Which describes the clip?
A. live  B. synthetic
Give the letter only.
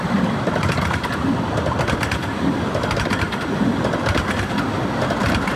A